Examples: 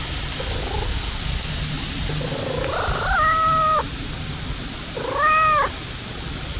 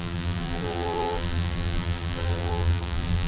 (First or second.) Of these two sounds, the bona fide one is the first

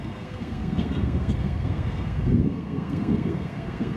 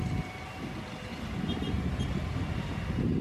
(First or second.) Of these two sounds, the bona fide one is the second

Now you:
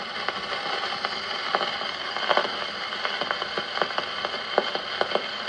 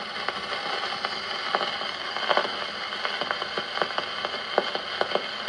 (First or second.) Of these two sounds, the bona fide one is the second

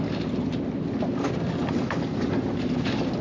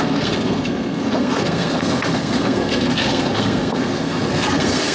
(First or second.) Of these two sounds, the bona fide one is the first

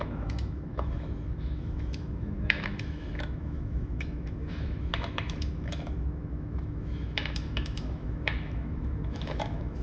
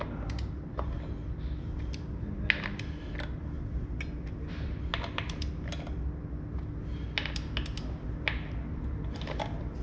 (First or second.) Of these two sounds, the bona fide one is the second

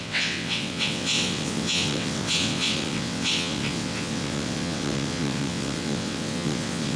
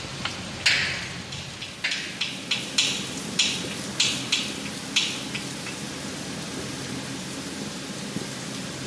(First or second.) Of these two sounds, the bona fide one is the second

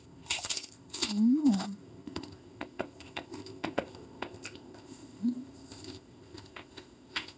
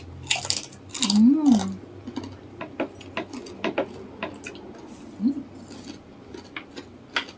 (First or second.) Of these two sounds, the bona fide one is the second